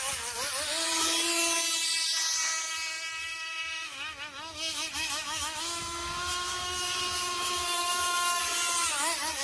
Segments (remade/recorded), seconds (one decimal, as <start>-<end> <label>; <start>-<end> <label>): 0.0-3.2 recorded; 3.2-8.4 remade; 8.4-9.4 recorded